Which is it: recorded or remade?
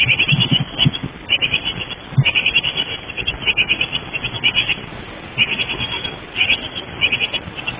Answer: recorded